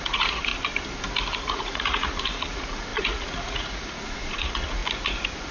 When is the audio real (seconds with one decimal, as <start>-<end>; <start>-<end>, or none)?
0.5-1.5; 4.8-5.5